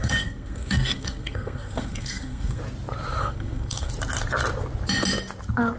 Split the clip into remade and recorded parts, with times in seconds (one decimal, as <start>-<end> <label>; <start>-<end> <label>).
0.0-2.6 remade; 2.6-3.2 recorded; 3.2-3.9 remade; 3.9-5.8 recorded